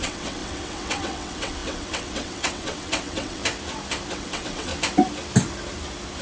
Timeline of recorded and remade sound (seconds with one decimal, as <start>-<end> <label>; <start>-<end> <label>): 0.0-3.4 remade; 3.4-4.1 recorded; 4.1-4.7 remade; 4.7-6.2 recorded